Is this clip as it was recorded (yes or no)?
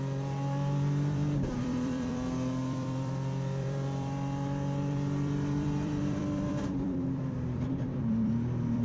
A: no